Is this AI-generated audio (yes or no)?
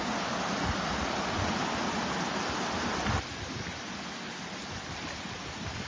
no